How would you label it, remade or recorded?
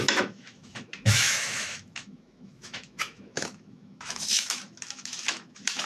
remade